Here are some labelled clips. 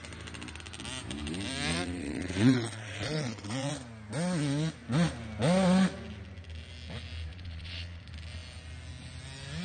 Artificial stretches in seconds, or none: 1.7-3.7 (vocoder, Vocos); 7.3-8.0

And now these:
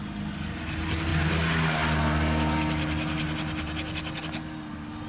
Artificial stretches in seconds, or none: none

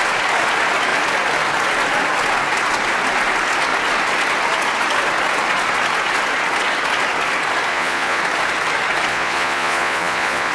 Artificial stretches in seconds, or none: 7.7-8.2 (vocoder, Vocos); 9.1-10.5

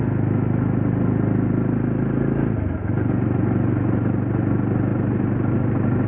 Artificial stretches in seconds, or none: none

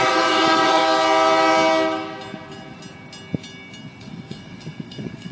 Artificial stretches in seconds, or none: 0.0-0.8 (vocoder, WaveNeXt); 4.0-5.3

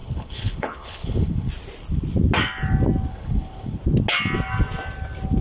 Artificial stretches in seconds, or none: 0.0-1.5 (codec, HILCodec); 3.1-3.8

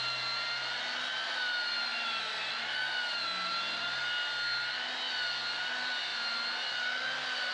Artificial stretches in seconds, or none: none

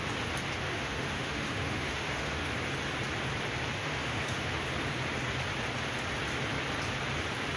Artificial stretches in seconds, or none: 0.6-2.5 (autoencoder, DAC-VAE); 3.8-4.6